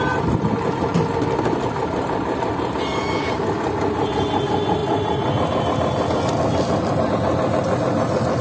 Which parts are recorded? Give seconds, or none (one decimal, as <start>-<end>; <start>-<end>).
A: 0.0-8.4